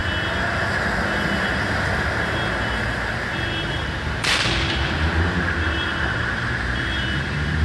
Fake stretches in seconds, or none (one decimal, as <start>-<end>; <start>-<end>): 3.2-7.6